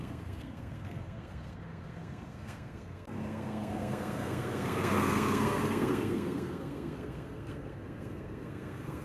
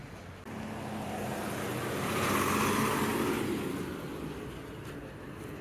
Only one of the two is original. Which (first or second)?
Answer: second